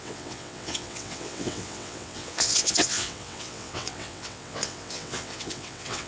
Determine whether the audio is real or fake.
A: fake